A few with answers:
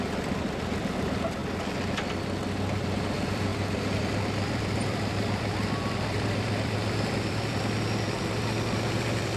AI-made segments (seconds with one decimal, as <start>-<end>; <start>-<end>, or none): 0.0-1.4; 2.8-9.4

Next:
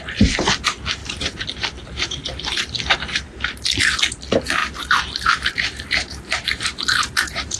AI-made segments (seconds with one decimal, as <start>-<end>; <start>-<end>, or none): 1.0-3.8; 4.6-7.6

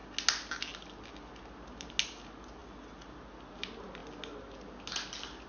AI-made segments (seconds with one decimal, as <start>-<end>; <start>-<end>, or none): none

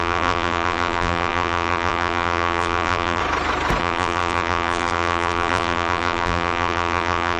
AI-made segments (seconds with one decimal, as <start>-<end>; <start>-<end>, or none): 0.0-3.2; 3.8-7.4